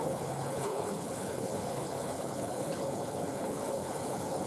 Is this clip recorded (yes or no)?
no